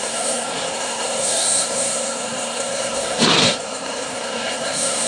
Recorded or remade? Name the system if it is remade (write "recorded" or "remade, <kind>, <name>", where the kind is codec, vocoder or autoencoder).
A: remade, codec, SNAC